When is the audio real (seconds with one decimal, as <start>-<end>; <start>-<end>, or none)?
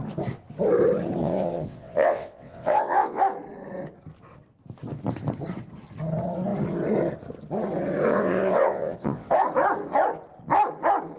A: 0.0-1.2; 3.2-8.1; 9.3-11.2